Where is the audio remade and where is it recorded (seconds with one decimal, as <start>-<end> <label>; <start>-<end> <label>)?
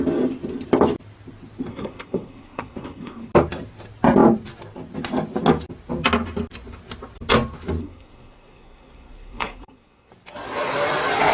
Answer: 0.0-1.7 recorded; 1.7-3.3 remade; 3.3-7.8 recorded; 7.8-10.1 remade; 10.1-11.3 recorded